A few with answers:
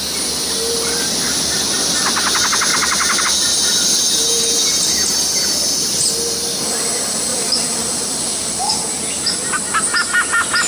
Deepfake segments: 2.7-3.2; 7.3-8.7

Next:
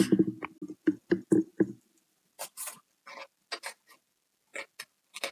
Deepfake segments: none

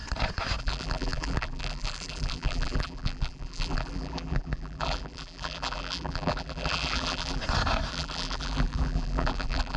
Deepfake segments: 0.6-7.4; 7.9-9.8

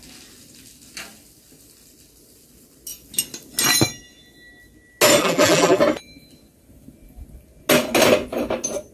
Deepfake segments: 5.2-5.8

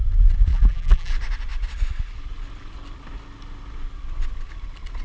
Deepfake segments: 0.5-1.1

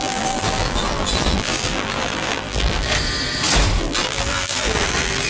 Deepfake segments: 0.0-2.9; 3.8-5.3